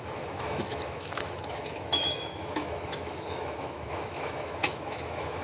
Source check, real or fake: fake